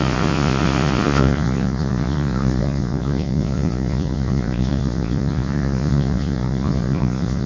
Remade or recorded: remade